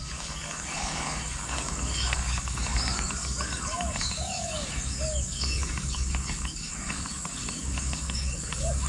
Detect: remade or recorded remade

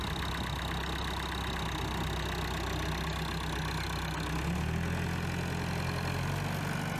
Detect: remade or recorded recorded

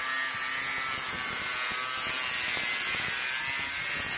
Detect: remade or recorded recorded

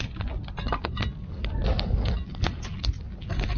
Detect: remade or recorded recorded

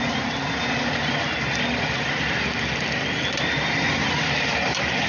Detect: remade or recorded recorded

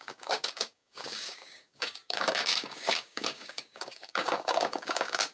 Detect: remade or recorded remade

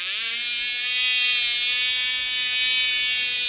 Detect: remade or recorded recorded